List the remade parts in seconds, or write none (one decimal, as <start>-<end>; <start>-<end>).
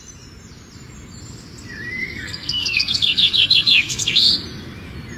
2.0-4.3